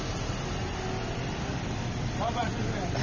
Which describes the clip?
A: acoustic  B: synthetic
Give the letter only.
A